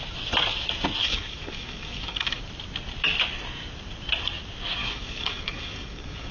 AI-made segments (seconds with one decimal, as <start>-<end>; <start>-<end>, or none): 1.0-2.4; 4.8-6.3